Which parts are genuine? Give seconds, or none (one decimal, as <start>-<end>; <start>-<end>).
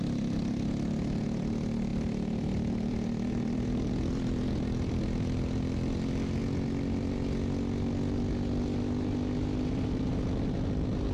0.0-1.9; 3.9-11.1